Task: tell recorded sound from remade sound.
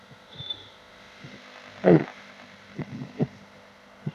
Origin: remade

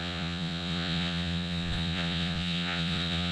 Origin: remade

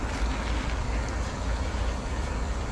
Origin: recorded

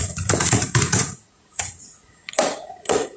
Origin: remade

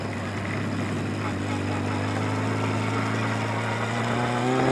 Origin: recorded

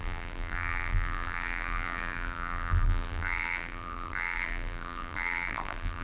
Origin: remade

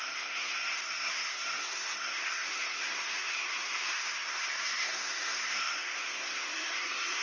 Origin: remade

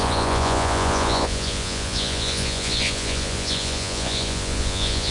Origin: remade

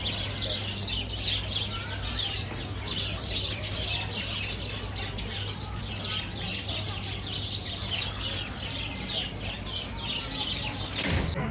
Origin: recorded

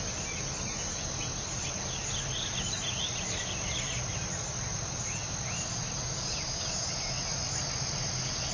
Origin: recorded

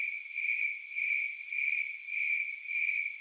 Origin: recorded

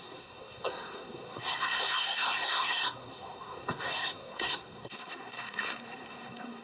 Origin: remade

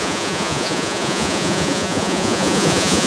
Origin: remade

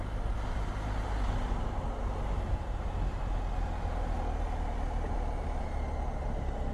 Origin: recorded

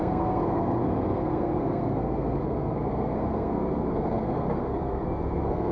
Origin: remade